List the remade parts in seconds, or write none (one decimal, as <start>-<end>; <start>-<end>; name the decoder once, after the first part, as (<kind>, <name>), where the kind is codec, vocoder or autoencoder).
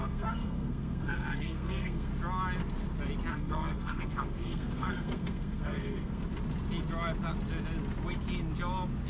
0.0-2.1 (codec, SNAC); 3.3-6.2